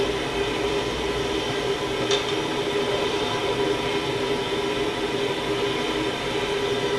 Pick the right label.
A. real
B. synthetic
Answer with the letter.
A